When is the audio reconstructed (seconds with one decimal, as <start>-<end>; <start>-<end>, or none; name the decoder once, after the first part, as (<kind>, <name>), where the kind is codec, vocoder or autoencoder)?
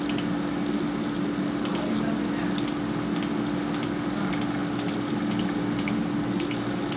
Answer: none